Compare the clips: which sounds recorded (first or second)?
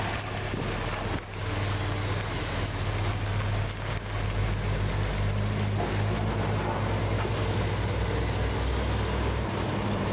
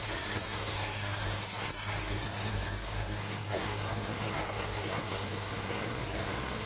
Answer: first